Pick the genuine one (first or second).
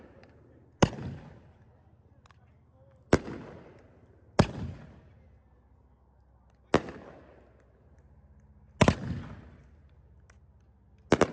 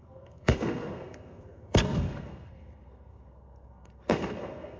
first